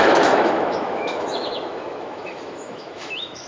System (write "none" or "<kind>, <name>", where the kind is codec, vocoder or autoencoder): autoencoder, DAC-VAE